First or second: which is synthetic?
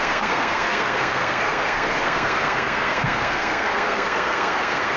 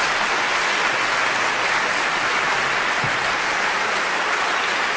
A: first